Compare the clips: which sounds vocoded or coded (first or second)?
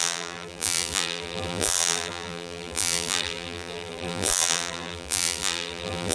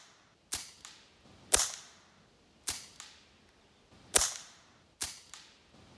first